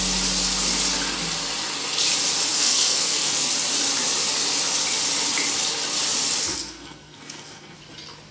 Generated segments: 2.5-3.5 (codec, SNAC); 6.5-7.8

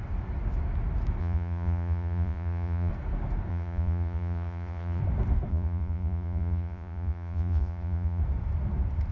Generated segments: 1.2-2.9 (vocoder, Vocos); 3.5-5.0; 5.5-8.2